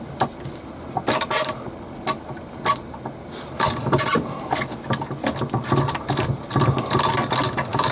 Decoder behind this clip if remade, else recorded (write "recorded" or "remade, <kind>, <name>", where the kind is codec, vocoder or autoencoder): recorded